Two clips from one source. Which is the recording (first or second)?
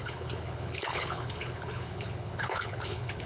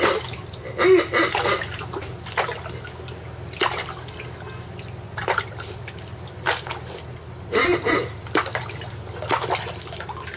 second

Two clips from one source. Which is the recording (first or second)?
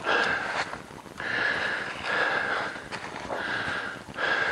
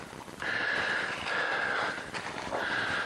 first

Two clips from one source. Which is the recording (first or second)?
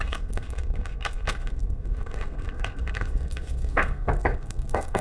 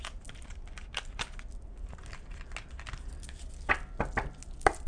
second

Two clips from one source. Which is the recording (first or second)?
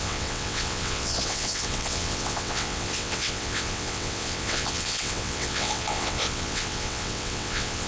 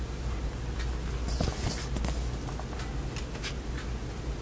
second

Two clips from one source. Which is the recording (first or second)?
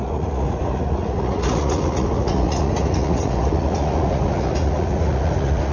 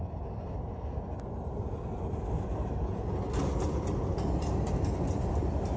second